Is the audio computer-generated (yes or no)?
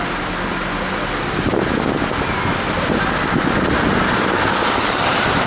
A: no